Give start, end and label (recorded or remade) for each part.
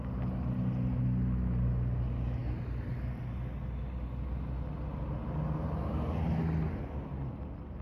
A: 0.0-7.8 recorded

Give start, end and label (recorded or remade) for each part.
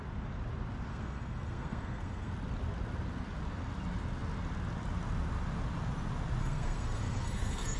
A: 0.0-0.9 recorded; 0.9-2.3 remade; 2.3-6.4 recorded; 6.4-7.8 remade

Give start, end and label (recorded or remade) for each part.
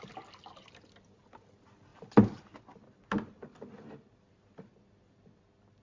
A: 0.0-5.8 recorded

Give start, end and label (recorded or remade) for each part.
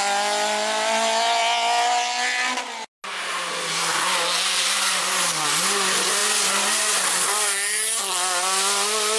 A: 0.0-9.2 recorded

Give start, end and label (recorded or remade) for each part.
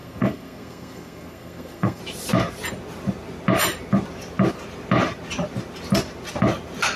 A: 0.0-2.0 remade; 2.0-7.0 recorded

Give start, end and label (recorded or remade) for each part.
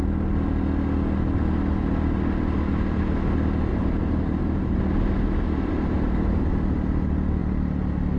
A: 0.0-3.7 recorded; 3.7-6.5 remade; 6.5-8.2 recorded